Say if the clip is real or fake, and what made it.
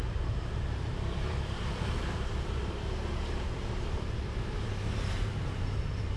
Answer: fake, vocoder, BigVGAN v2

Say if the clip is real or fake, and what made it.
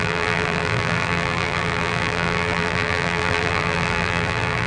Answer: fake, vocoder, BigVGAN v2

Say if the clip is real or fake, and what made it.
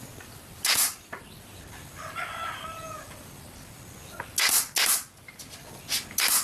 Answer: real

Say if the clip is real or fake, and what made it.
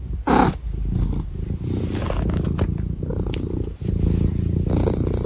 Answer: real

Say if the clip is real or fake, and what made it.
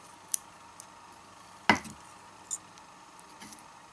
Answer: real